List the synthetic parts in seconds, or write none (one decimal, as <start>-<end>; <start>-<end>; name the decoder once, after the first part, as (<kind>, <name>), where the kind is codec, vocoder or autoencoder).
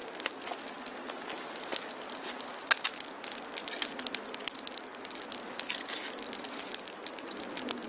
none